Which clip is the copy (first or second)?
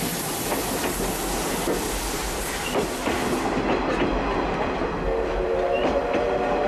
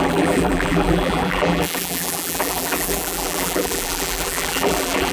second